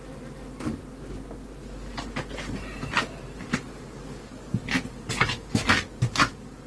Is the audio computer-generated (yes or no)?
no